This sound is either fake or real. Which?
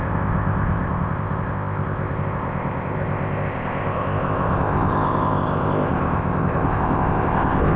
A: fake